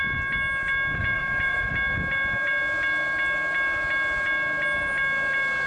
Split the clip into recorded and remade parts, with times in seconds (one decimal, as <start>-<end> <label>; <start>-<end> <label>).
0.0-1.0 recorded; 1.0-1.7 remade; 1.7-5.7 recorded